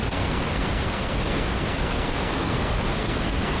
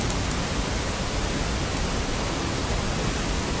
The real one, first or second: second